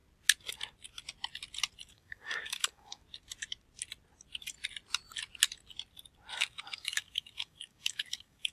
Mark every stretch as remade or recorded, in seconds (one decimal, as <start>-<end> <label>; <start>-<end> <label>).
0.0-1.9 recorded; 1.9-3.0 remade; 3.0-6.3 recorded; 6.3-8.5 remade